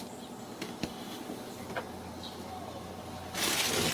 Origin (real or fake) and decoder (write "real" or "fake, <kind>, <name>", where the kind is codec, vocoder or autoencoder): real